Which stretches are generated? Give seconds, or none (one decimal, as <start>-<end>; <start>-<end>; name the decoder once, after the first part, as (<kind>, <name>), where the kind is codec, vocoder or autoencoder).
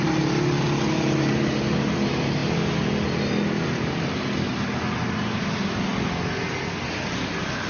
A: none